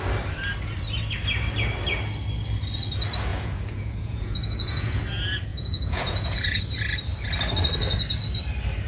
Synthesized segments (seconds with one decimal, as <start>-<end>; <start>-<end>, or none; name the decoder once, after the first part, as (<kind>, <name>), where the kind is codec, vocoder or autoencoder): 3.3-5.0 (vocoder, Vocos); 5.5-6.6